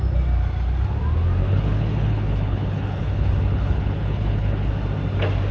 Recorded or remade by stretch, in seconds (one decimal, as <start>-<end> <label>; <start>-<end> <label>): 0.0-1.4 recorded; 1.4-4.7 remade; 4.7-5.5 recorded